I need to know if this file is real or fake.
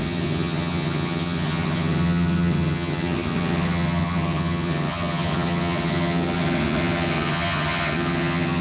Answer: fake